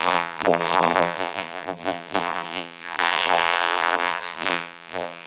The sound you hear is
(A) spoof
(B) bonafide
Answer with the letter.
A